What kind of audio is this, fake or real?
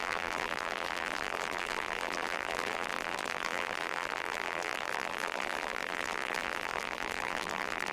fake